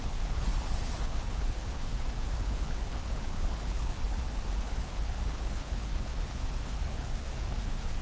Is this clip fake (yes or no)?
yes